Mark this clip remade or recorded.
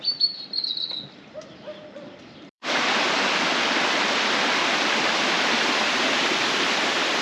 remade